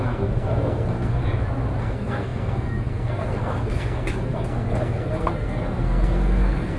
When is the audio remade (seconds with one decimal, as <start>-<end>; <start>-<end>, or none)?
0.0-1.2; 1.8-6.8

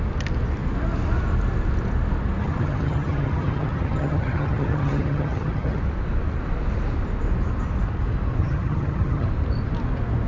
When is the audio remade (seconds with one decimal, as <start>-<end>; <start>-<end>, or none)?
2.4-5.8; 8.4-9.3

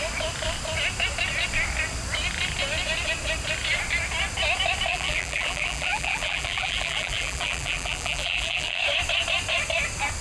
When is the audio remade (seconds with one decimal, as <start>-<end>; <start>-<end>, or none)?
4.9-8.8

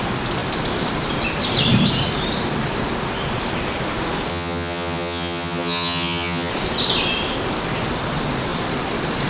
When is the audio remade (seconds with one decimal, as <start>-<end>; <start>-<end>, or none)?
4.3-6.5

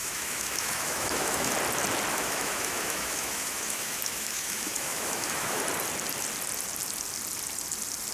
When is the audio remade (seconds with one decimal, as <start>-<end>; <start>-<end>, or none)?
0.0-1.5; 2.1-5.6

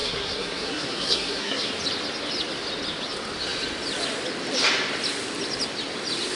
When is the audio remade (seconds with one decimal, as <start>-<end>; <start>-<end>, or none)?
0.0-1.7

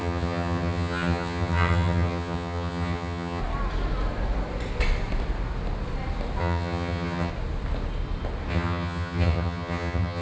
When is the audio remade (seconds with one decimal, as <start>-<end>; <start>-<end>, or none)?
0.0-3.4; 6.4-7.3; 8.5-10.2

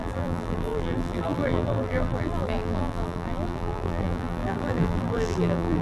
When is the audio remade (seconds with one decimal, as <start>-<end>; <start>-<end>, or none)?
0.0-5.8